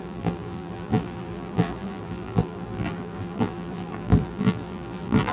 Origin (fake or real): fake